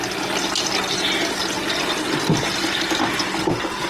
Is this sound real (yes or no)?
yes